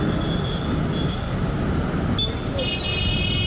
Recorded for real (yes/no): yes